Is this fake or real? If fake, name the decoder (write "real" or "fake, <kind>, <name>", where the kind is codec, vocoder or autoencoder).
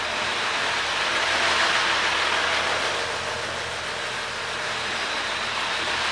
real